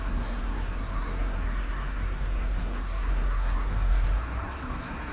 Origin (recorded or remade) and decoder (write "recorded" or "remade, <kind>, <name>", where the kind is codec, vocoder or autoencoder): remade, codec, SNAC